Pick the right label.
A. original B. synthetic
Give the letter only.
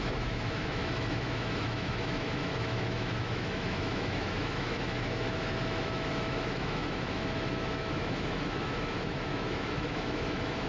B